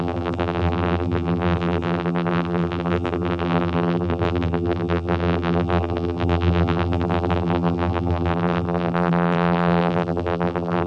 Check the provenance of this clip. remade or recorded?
remade